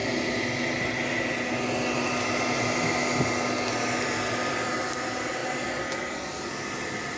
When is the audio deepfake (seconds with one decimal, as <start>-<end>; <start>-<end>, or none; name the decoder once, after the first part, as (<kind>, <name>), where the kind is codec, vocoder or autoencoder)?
none